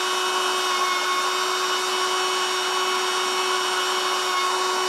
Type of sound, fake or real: real